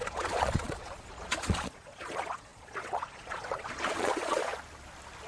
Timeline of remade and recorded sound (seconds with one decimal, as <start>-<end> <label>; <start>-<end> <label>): 0.0-4.5 remade; 4.5-5.3 recorded